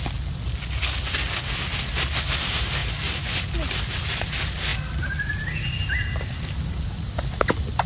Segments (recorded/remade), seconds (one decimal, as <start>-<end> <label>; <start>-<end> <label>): 0.0-7.9 recorded